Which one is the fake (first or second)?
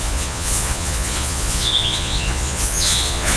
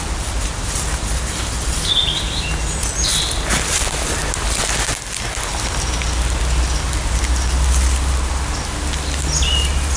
first